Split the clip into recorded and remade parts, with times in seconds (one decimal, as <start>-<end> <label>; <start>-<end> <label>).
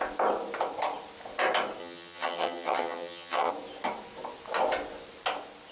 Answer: 0.0-1.8 recorded; 1.8-3.5 remade; 3.5-5.7 recorded